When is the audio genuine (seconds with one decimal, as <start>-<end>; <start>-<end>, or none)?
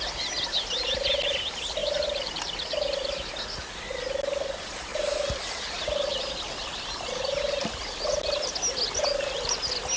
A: 0.0-1.8; 2.3-10.0